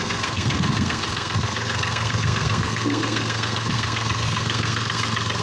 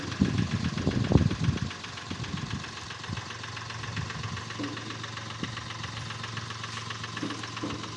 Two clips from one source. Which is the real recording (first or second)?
second